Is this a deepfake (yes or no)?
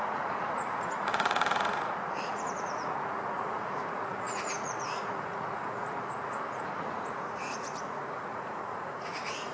yes